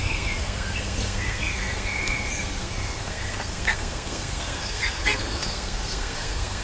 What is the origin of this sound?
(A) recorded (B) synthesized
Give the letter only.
B